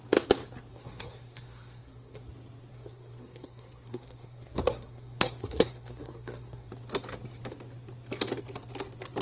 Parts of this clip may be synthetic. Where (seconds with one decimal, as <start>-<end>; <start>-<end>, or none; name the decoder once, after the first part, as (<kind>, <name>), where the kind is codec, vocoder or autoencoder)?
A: 0.7-2.3 (codec, SNAC); 2.7-6.7